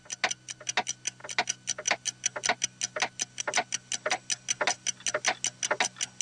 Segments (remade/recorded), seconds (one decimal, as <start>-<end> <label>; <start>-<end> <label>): 0.0-6.2 recorded